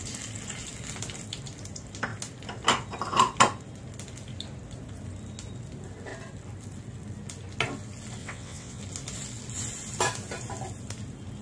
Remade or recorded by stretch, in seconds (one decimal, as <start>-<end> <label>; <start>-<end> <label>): 0.0-8.2 recorded; 8.2-8.8 remade; 8.8-11.4 recorded